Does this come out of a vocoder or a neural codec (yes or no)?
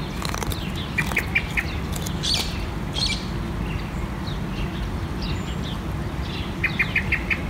no